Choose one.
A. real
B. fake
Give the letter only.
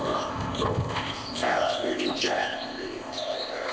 B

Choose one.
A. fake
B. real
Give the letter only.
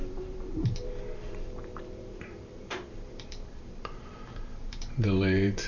A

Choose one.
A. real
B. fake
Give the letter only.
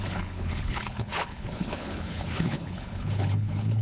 B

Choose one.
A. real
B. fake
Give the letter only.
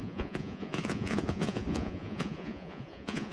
B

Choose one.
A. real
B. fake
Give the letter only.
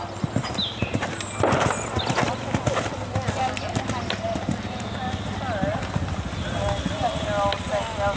A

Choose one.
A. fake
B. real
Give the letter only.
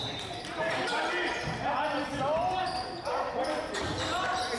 B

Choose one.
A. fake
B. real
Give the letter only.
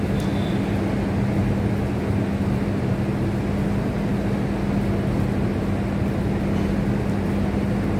B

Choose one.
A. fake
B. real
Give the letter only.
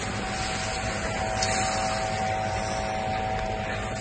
B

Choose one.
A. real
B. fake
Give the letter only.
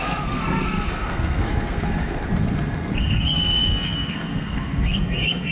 B